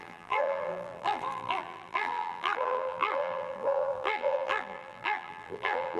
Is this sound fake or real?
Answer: fake